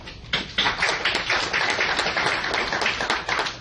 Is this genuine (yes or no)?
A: yes